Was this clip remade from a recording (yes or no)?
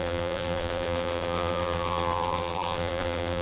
yes